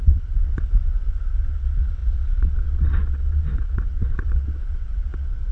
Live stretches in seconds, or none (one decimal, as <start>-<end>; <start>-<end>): none